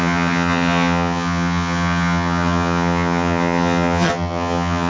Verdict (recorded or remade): remade